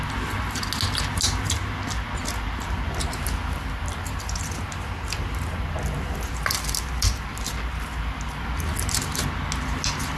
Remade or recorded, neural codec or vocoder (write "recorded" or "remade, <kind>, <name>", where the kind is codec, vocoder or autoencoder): recorded